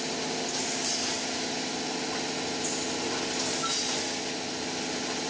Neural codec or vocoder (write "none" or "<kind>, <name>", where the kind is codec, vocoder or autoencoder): none